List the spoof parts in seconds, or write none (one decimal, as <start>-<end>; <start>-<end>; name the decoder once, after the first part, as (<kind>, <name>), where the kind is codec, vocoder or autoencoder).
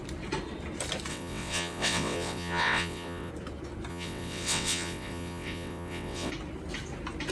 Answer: 1.1-3.3 (vocoder, WaveNeXt); 3.9-6.3